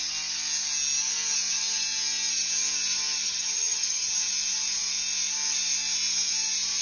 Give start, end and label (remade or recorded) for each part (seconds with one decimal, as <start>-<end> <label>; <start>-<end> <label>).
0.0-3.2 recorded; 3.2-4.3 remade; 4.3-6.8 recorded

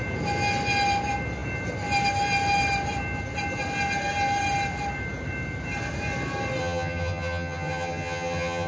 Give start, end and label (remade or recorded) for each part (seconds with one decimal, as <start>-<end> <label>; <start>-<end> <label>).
0.0-6.6 recorded; 6.6-8.7 remade

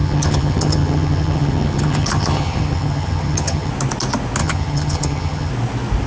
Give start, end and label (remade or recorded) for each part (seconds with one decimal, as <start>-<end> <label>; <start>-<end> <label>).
0.0-3.7 remade; 3.7-4.4 recorded; 4.4-5.5 remade; 5.5-6.1 recorded

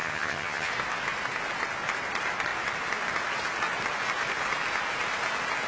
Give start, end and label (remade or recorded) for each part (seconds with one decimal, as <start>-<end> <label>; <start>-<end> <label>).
0.0-0.7 remade; 0.7-5.7 recorded

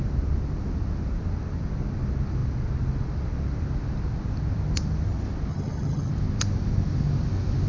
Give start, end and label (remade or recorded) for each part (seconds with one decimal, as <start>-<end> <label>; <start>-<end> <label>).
0.0-5.5 recorded; 5.5-6.1 remade; 6.1-7.7 recorded

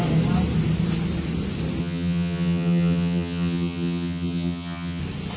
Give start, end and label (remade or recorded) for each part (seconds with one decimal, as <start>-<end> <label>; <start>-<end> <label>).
0.0-1.8 recorded; 1.8-5.0 remade; 5.0-5.4 recorded